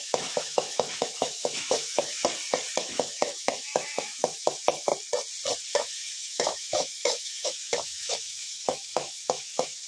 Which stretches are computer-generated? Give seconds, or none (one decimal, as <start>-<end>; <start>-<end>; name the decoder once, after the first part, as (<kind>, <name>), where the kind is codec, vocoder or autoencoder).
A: 0.0-2.2 (autoencoder, DAC-VAE); 2.8-4.9; 5.7-9.9